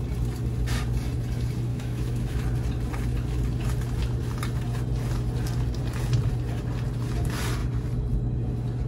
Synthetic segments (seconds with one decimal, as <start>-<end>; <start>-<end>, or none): 1.7-2.4